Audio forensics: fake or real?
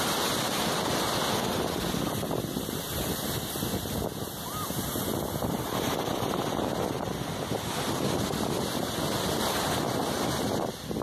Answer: real